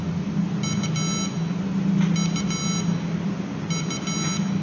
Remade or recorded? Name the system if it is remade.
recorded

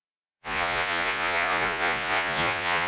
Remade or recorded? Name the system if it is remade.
remade, vocoder, Vocos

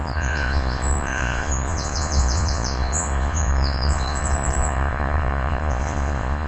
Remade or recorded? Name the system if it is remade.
remade, vocoder, Vocos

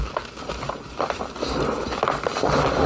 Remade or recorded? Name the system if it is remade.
recorded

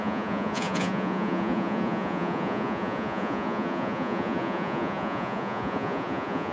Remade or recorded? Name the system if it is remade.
remade, vocoder, Vocos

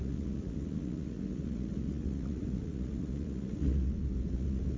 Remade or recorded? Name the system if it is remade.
remade, vocoder, Vocos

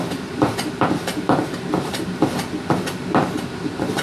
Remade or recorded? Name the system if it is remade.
recorded